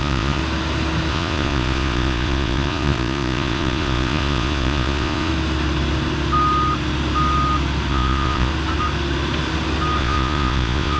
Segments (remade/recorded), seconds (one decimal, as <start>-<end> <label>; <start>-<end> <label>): 0.0-0.4 remade; 0.4-1.1 recorded; 1.1-5.3 remade; 5.3-7.9 recorded; 7.9-8.5 remade; 8.5-10.0 recorded; 10.0-11.0 remade